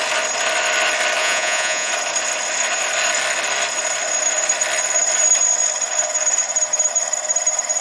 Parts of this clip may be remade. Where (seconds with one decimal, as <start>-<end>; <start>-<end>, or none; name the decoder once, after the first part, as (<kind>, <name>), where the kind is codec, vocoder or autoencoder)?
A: 1.2-1.9 (vocoder, Vocos)

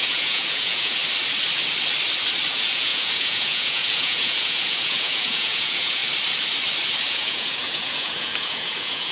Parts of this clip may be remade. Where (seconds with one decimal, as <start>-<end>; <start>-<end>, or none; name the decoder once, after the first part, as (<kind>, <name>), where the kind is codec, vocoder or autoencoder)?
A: 0.0-1.0 (vocoder, Vocos); 2.5-6.0; 7.1-9.1